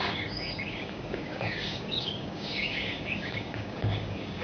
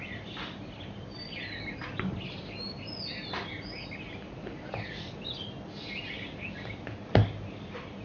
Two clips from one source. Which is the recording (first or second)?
second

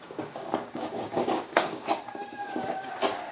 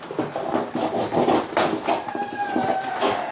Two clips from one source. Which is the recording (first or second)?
second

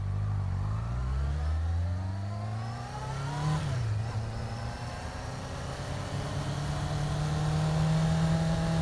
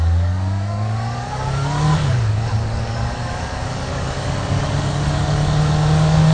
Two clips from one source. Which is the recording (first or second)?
first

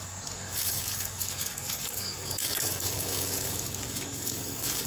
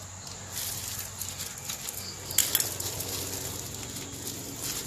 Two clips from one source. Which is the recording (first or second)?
second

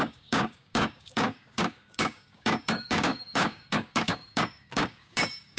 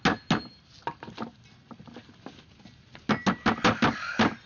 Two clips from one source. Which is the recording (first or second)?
second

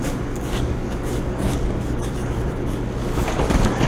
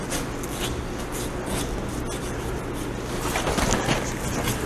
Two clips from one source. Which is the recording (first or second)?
second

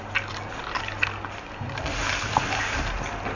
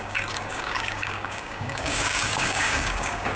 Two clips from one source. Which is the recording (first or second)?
first